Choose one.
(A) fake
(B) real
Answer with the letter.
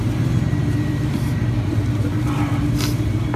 A